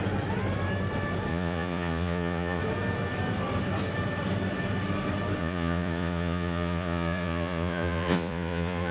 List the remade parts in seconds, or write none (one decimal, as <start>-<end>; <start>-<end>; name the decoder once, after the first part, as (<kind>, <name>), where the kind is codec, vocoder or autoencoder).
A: 1.3-2.6 (vocoder, Vocos); 5.4-8.9